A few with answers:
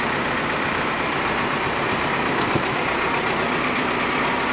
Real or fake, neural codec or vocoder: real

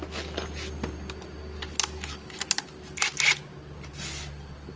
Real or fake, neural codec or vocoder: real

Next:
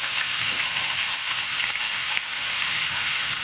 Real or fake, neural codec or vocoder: fake, autoencoder, DAC-VAE